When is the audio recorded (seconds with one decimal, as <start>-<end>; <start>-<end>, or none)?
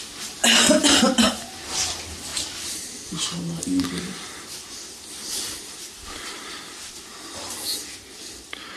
0.0-8.8